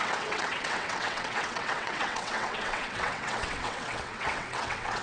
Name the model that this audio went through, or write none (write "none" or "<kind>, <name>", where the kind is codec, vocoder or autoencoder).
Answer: vocoder, WaveNeXt